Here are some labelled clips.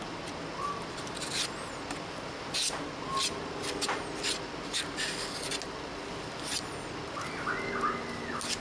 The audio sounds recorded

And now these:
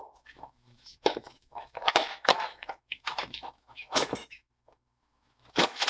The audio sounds remade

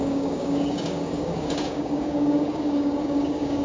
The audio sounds remade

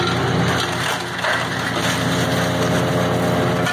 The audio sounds recorded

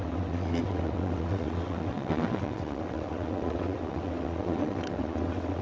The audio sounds remade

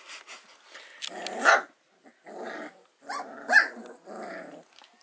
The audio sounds recorded